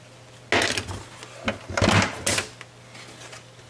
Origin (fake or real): real